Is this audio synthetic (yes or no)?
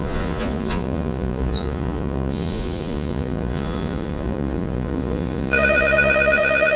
yes